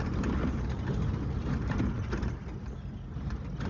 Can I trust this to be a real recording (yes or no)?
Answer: yes